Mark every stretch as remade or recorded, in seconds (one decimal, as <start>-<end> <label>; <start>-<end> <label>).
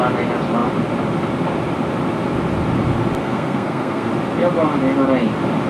0.0-3.2 recorded; 3.2-4.1 remade; 4.1-5.7 recorded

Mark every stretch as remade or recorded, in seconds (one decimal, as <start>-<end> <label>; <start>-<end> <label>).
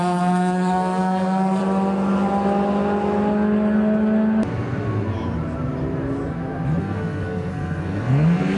0.0-1.6 remade; 1.6-6.8 recorded; 6.8-8.6 remade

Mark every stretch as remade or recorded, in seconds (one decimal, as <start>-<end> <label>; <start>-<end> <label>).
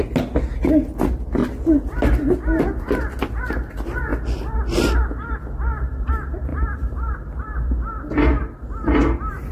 0.0-6.5 recorded; 6.5-9.5 remade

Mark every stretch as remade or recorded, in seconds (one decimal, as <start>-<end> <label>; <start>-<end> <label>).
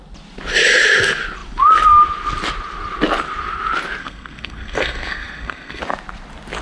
0.0-4.0 recorded; 4.0-5.8 remade; 5.8-6.6 recorded